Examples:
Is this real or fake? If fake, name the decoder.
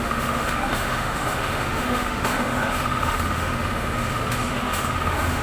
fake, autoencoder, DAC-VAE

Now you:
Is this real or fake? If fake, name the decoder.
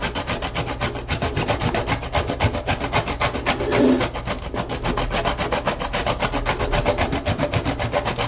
real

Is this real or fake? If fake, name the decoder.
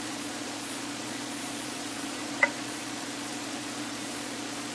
fake, vocoder, Vocos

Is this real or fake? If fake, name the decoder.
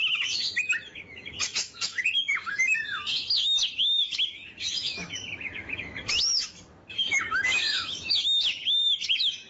fake, autoencoder, DAC-VAE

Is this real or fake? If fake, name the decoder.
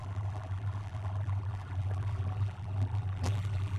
fake, vocoder, BigVGAN v2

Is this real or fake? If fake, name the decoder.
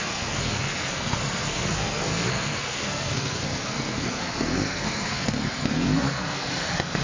fake, codec, SNAC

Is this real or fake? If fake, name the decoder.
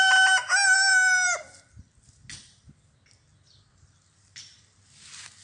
real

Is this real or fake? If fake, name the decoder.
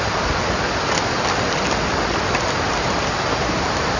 real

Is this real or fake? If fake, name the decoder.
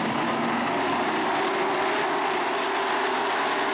real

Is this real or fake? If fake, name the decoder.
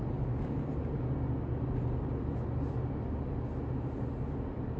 real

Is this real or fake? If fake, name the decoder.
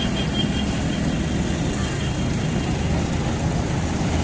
real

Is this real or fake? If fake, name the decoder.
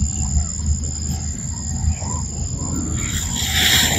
real